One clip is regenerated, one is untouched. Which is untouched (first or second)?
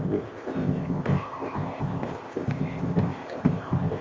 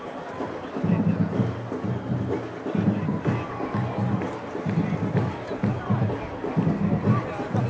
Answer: second